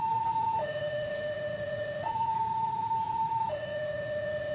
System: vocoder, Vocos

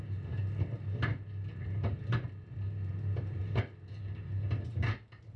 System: none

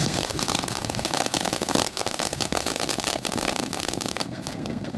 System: codec, SNAC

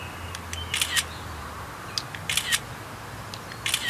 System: none